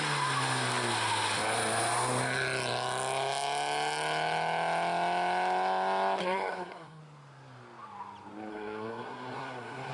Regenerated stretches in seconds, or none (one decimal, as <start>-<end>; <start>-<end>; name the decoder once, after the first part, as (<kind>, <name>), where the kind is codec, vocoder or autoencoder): 6.2-7.0 (codec, SNAC); 8.5-9.9